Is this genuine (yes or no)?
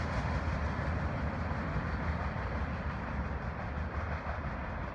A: yes